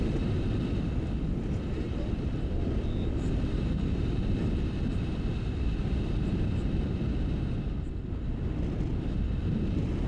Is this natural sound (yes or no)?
yes